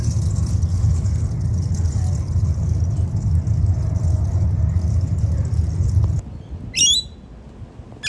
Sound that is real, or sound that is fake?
real